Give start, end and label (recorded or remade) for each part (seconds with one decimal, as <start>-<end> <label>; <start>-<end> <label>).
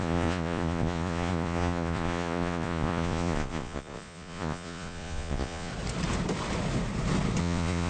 0.0-5.7 remade; 5.7-7.4 recorded; 7.4-7.9 remade